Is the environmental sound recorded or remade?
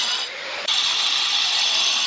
recorded